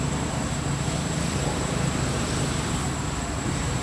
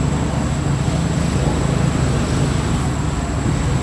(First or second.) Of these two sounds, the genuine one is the second